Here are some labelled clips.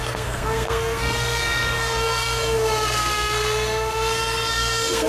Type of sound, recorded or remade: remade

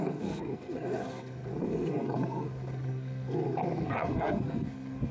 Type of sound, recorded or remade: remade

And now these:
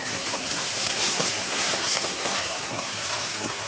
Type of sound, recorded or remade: remade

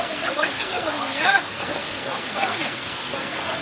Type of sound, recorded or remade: remade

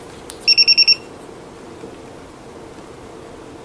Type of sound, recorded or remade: recorded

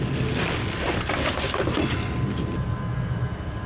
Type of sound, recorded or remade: recorded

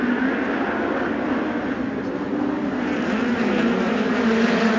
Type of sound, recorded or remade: recorded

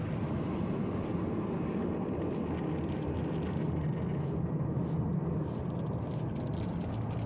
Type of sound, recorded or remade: recorded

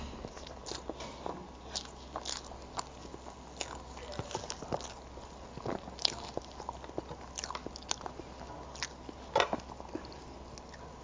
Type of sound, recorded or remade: recorded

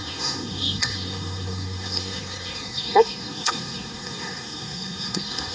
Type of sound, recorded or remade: remade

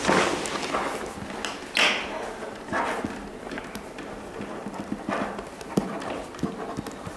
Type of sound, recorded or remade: recorded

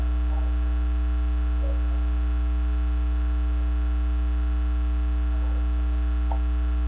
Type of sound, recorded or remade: recorded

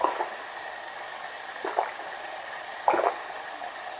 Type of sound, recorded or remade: recorded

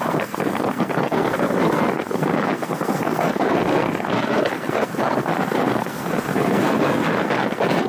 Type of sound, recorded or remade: remade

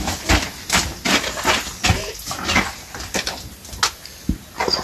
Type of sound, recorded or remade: recorded